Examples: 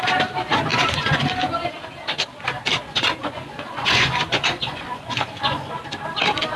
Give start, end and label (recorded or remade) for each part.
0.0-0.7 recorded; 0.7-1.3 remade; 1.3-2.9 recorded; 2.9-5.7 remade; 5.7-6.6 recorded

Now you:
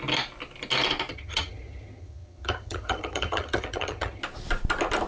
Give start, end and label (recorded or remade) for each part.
0.0-1.1 recorded; 1.1-4.2 remade; 4.2-5.1 recorded

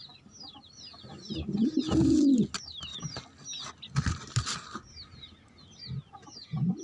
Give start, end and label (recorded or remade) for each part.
0.0-6.8 recorded

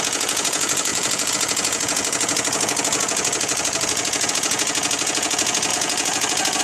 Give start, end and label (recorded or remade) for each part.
0.0-6.6 remade

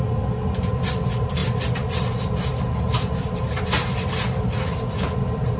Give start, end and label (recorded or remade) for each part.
0.0-5.6 recorded

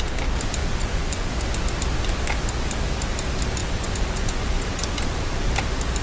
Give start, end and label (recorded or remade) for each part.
0.0-0.6 recorded; 0.6-1.3 remade; 1.3-3.6 recorded; 3.6-5.5 remade; 5.5-6.0 recorded

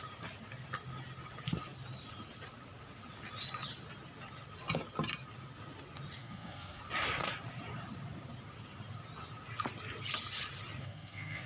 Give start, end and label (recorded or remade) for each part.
0.0-6.2 recorded; 6.2-6.8 remade; 6.8-10.8 recorded; 10.8-11.5 remade

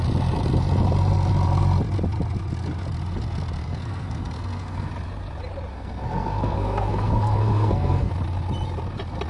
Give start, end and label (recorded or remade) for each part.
0.0-3.6 recorded; 3.6-4.9 remade; 4.9-5.7 recorded; 5.7-8.1 remade; 8.1-9.3 recorded